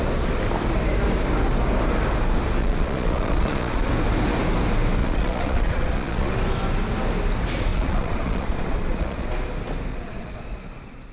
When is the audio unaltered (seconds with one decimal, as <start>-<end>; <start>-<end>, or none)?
0.0-2.6; 3.9-5.0; 6.3-7.7; 9.3-9.9

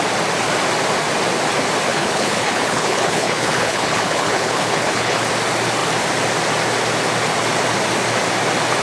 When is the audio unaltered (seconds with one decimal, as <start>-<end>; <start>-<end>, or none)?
0.0-1.9; 5.3-8.8

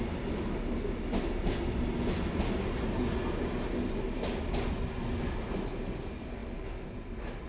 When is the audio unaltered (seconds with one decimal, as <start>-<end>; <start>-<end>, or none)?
0.0-7.5